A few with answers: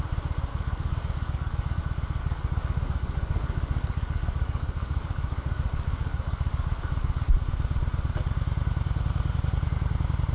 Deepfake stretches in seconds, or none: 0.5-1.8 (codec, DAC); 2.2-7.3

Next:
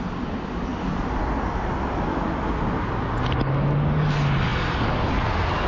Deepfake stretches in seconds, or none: none

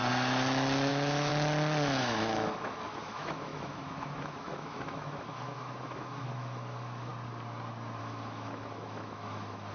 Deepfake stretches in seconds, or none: 0.9-1.3 (autoencoder, DAC-VAE); 2.0-7.1; 8.0-9.7

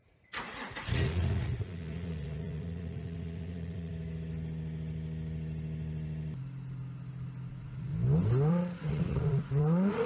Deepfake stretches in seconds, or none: 0.0-3.9 (vocoder, Vocos); 7.5-7.9; 8.5-10.1

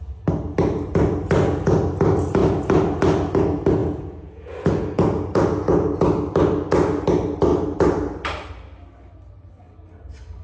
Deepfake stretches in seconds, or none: 3.8-6.0 (vocoder, Vocos)

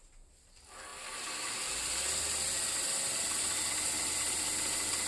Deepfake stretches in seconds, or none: none

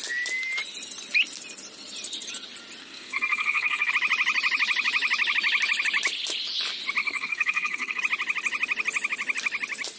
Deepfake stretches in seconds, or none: 2.8-3.9 (codec, SNAC); 7.0-8.0

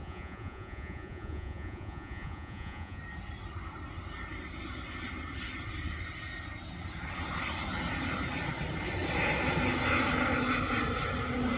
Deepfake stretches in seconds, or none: 0.0-3.0 (vocoder, Vocos)